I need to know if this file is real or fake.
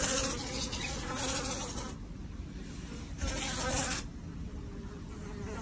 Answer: real